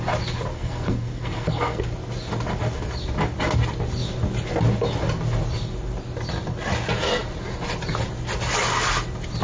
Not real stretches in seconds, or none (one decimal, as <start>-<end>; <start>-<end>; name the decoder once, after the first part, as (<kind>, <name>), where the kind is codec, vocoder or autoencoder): 0.5-1.8 (codec, SNAC)